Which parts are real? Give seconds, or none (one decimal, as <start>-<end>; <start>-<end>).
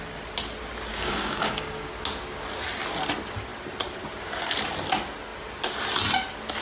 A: 0.0-0.9; 1.9-6.6